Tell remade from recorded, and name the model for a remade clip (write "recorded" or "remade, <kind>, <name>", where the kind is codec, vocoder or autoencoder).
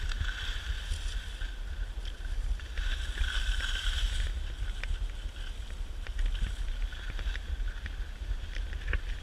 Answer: recorded